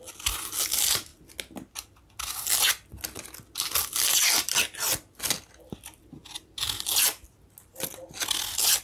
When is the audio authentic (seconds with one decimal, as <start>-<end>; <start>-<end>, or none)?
0.0-8.8